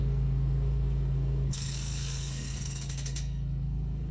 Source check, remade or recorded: remade